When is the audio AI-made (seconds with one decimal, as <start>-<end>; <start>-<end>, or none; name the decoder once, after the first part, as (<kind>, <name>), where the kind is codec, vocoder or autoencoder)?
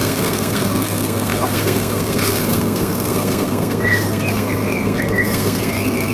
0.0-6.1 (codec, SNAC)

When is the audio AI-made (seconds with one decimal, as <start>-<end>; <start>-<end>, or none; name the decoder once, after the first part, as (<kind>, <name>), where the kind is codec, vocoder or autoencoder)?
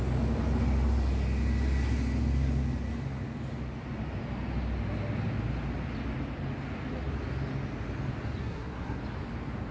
8.4-9.0 (codec, SNAC)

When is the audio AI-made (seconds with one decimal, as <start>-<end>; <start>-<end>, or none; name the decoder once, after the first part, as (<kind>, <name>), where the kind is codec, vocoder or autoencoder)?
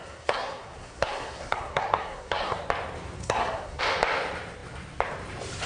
0.0-2.6 (codec, SNAC); 3.2-3.8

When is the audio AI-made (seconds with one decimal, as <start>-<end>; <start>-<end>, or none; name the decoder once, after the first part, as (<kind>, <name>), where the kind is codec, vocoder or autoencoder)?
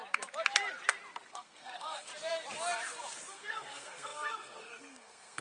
1.3-2.1 (codec, SNAC); 3.3-5.4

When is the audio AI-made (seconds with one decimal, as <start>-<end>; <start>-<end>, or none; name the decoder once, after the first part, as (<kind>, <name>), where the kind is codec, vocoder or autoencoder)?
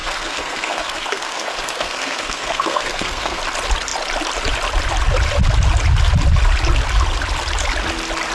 0.0-3.4 (codec, SNAC)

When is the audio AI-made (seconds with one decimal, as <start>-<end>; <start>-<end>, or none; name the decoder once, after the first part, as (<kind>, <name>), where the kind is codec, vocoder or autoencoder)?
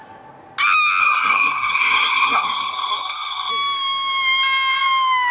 1.0-3.5 (codec, SNAC)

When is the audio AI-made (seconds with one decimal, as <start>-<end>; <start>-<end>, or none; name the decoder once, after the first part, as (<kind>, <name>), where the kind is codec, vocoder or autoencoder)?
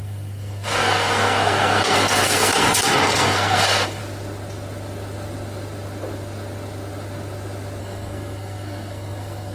0.0-4.0 (codec, SNAC); 7.8-9.5